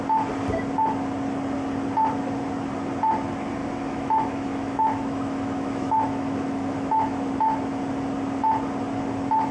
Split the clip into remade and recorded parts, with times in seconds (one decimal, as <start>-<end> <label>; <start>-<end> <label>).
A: 0.0-3.6 recorded; 3.6-7.3 remade; 7.3-9.5 recorded

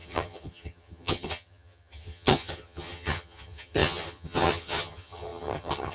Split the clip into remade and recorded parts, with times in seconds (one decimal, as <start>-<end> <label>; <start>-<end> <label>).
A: 0.0-5.9 remade